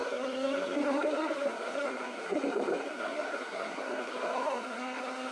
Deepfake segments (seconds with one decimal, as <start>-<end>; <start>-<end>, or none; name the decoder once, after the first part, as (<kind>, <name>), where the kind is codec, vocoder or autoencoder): 0.0-5.3 (codec, SNAC)